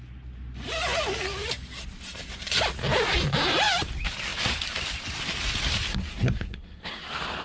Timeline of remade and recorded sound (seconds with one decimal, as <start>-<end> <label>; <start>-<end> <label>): 0.0-5.9 recorded; 5.9-7.0 remade; 7.0-7.4 recorded